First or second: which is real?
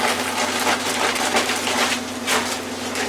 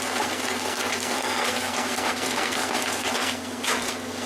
first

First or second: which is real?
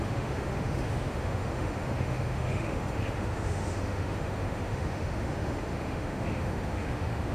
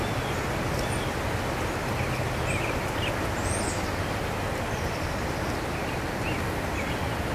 second